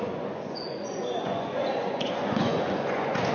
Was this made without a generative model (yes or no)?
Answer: no